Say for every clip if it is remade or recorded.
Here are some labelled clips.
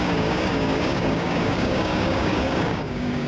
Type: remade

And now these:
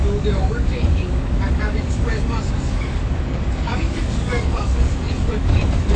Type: remade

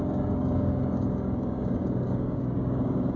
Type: remade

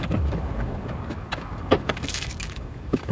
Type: remade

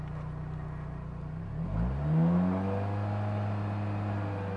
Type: recorded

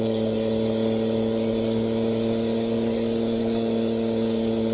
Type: remade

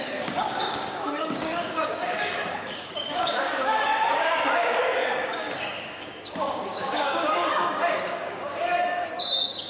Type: remade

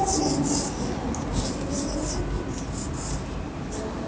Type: recorded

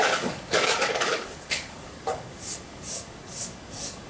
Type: remade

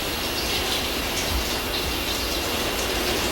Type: recorded